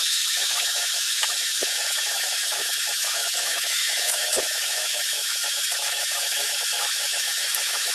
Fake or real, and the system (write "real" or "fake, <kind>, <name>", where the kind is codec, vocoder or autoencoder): fake, autoencoder, DAC-VAE